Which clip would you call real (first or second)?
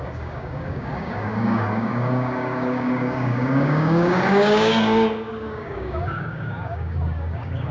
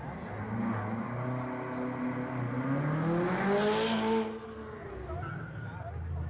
second